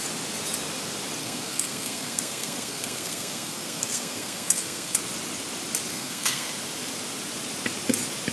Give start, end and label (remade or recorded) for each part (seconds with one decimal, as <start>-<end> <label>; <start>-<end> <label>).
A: 0.0-1.2 recorded; 1.2-5.0 remade; 5.0-5.9 recorded; 5.9-6.5 remade; 6.5-8.3 recorded

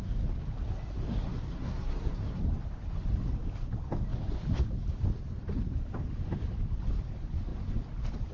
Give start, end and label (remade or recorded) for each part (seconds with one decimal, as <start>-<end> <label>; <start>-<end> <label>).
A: 0.0-1.1 recorded; 1.1-2.4 remade; 2.4-8.3 recorded

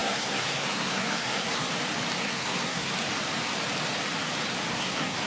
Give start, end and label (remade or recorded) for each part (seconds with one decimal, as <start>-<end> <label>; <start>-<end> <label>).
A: 0.0-1.7 remade; 1.7-2.2 recorded; 2.2-2.9 remade; 2.9-4.7 recorded; 4.7-5.3 remade

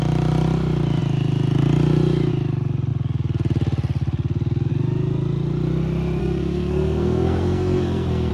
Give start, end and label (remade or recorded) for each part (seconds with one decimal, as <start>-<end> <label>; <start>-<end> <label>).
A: 0.0-6.2 recorded; 6.2-8.3 remade